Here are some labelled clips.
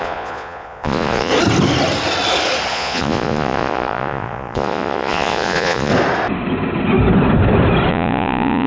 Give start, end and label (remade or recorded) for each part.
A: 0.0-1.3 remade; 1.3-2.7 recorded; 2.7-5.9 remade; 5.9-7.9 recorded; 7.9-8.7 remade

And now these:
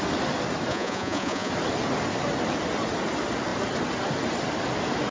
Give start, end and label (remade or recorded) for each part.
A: 0.0-0.7 recorded; 0.7-1.5 remade; 1.5-5.1 recorded